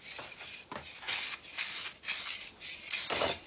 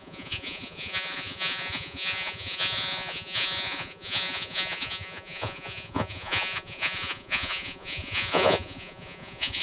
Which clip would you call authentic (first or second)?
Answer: first